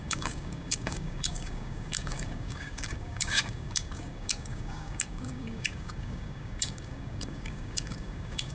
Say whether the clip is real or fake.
fake